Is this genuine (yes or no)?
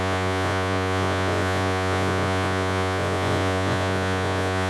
no